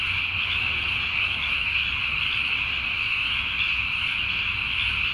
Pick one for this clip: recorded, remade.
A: recorded